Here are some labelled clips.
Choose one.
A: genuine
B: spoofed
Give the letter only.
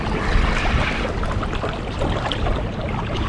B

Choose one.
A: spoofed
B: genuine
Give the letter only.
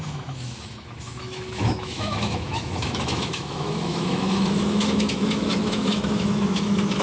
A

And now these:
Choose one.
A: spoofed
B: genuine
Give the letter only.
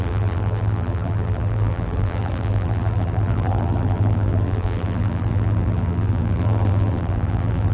A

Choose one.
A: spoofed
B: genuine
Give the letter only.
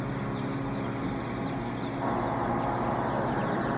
B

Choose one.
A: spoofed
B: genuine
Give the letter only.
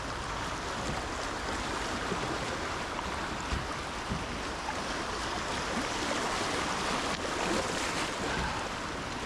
B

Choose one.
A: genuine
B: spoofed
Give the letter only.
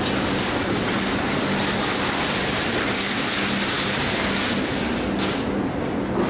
A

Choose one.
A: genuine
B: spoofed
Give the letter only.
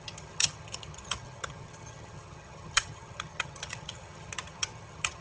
B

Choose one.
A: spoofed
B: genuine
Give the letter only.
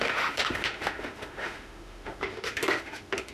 A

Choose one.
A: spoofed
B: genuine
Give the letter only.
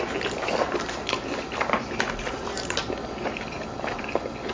B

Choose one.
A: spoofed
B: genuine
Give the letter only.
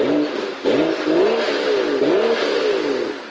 B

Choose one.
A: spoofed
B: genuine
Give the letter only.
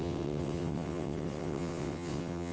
A